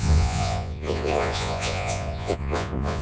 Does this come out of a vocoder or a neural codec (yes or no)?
yes